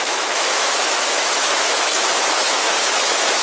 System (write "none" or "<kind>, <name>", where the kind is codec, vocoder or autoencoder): autoencoder, DAC-VAE